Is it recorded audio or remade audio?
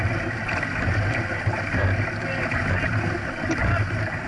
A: recorded